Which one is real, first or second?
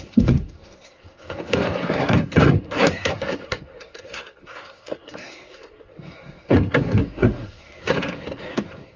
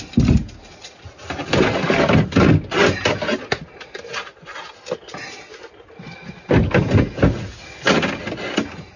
second